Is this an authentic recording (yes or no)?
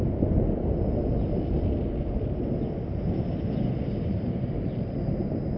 yes